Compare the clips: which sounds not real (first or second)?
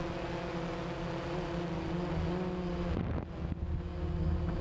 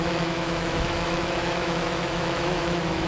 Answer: second